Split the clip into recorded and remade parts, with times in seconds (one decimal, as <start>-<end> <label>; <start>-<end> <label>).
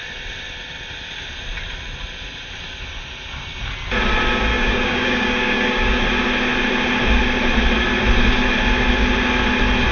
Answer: 0.0-4.5 recorded; 4.5-6.0 remade; 6.0-9.9 recorded